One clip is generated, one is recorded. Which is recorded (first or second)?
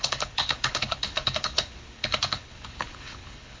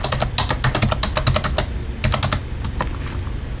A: second